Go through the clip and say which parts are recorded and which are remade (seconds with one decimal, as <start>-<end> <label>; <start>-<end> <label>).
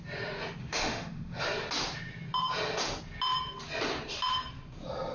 0.0-0.6 recorded; 0.6-1.4 remade; 1.4-5.1 recorded